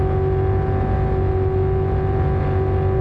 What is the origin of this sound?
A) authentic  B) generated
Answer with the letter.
A